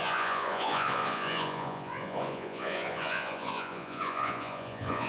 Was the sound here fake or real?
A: fake